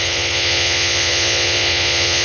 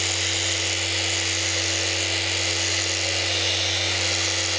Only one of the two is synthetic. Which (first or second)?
first